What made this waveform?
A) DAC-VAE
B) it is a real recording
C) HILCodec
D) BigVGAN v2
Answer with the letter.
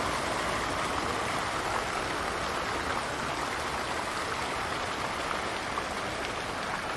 B